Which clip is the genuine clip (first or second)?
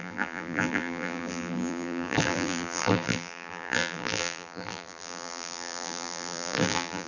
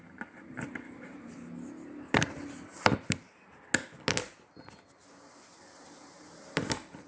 second